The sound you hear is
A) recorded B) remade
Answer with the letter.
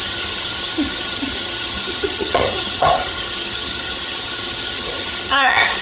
B